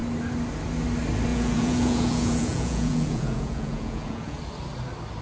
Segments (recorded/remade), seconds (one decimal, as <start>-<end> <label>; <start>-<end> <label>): 0.0-1.3 recorded; 1.3-4.4 remade; 4.4-5.2 recorded